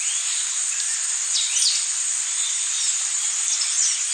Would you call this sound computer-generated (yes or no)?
no